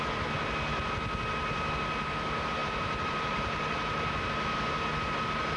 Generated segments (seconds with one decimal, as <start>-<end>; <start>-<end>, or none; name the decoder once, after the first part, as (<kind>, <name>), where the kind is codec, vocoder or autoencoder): 2.6-4.2 (vocoder, BigVGAN v2)